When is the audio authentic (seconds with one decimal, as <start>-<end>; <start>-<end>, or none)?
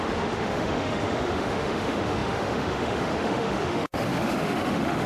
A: none